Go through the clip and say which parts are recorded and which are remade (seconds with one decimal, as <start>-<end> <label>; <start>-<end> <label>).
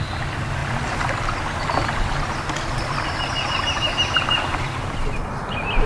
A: 0.0-0.6 recorded; 0.6-1.1 remade; 1.1-5.9 recorded